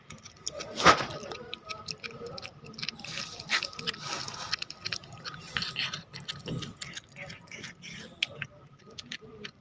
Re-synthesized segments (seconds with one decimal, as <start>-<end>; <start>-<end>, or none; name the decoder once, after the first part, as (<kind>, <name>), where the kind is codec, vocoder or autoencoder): 0.0-6.1 (vocoder, BigVGAN v2); 8.6-9.6